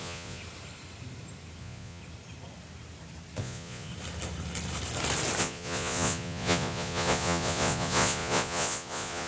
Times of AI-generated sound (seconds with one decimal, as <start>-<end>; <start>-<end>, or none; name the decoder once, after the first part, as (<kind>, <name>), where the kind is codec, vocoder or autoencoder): 0.0-0.4 (vocoder, Vocos); 1.6-2.0; 3.4-3.9; 5.4-9.3